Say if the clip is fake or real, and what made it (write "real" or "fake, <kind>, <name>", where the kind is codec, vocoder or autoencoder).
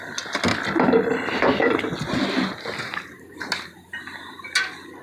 real